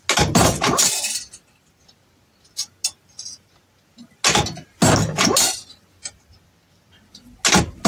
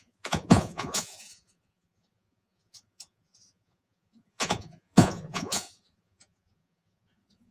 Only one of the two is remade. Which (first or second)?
second